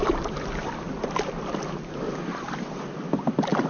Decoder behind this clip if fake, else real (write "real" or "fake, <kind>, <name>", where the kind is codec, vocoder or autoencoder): real